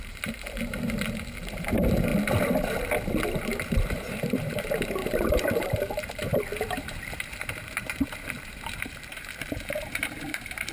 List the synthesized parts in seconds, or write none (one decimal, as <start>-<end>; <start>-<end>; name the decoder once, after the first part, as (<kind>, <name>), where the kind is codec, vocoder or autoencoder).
0.0-2.1 (vocoder, BigVGAN v2); 3.5-10.7